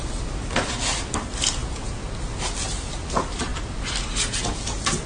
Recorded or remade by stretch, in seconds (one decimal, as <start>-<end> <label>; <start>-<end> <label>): 0.0-1.6 recorded; 1.6-2.1 remade; 2.1-5.1 recorded